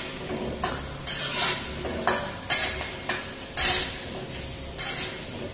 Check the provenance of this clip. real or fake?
real